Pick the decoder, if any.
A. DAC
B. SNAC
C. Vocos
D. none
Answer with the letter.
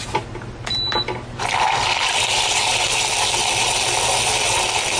D